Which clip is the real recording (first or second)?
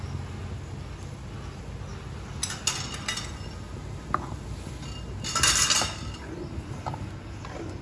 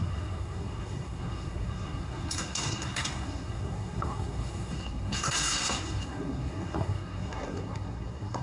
first